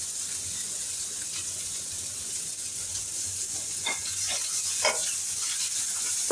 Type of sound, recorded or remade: remade